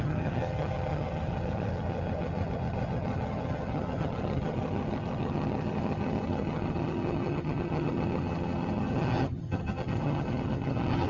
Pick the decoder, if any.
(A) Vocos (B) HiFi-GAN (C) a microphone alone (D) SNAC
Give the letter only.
B